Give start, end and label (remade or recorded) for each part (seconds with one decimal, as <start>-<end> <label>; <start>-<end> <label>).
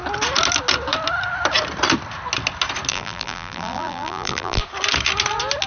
0.0-2.9 recorded; 2.9-4.6 remade; 4.6-5.7 recorded